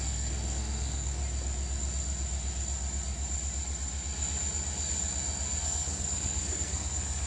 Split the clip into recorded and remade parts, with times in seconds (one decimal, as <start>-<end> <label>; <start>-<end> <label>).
0.0-1.2 remade; 1.2-5.6 recorded; 5.6-7.3 remade